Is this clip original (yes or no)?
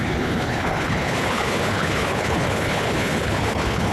no